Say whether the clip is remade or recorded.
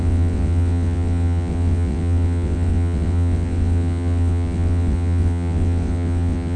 remade